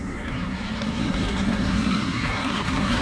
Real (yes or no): no